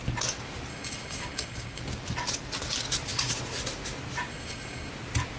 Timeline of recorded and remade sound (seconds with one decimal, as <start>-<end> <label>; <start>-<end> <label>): 0.0-0.7 recorded; 0.7-1.8 remade; 1.8-4.3 recorded; 4.3-4.9 remade; 4.9-5.4 recorded